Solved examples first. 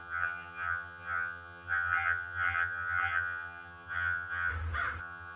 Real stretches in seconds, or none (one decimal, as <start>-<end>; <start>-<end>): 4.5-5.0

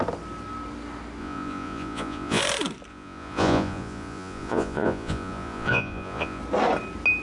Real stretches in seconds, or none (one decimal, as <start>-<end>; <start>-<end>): 0.0-1.2; 2.4-2.9; 6.4-7.2

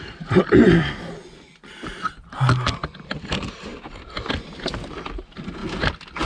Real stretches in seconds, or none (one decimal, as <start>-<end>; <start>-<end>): 0.8-2.9; 3.7-4.9

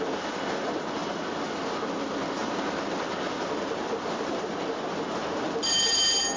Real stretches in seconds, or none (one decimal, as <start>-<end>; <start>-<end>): 0.0-6.4